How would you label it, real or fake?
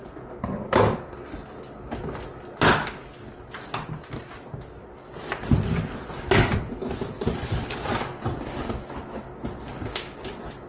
real